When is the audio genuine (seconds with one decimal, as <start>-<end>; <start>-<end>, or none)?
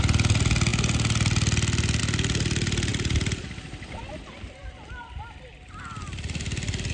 0.0-6.9